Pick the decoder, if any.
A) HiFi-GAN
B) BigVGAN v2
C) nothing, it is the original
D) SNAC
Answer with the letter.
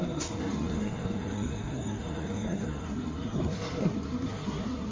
D